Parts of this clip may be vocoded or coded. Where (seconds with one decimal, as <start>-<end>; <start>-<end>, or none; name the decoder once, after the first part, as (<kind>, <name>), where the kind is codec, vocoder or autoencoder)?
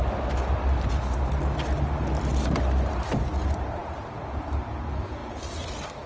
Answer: none